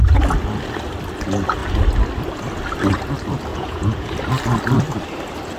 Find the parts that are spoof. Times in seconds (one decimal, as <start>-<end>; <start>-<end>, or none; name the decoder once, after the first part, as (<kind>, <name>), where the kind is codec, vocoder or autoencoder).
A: 3.5-4.1 (vocoder, Vocos)